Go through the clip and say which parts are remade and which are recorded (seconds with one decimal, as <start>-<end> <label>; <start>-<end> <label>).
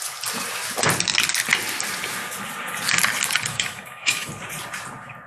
0.0-3.5 recorded; 3.5-4.3 remade; 4.3-5.3 recorded